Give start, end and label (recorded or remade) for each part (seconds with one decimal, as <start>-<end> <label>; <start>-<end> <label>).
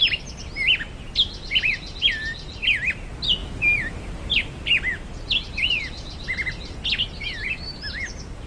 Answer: 0.0-8.5 recorded